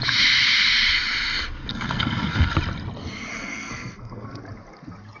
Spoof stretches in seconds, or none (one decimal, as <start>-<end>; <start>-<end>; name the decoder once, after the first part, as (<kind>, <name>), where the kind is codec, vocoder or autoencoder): 1.7-2.5 (codec, SNAC); 3.3-4.4